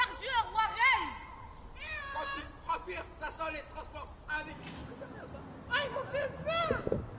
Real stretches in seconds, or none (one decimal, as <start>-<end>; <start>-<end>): 0.0-7.2